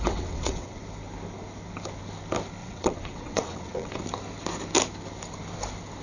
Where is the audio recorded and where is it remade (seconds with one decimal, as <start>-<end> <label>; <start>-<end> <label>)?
0.0-0.8 remade; 0.8-2.6 recorded; 2.6-4.0 remade; 4.0-6.0 recorded